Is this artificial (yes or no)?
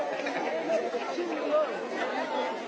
no